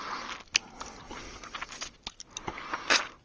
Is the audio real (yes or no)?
yes